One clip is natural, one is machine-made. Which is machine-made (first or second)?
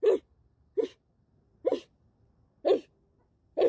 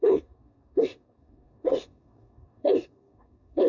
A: second